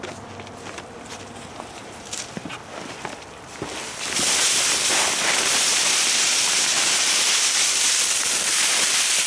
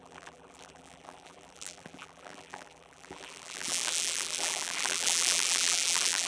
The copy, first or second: second